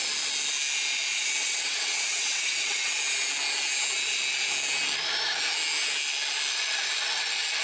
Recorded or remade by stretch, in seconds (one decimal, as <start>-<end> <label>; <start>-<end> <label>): 0.0-1.4 recorded; 1.4-2.9 remade; 2.9-7.6 recorded